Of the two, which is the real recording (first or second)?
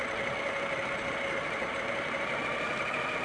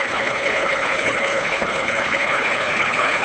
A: first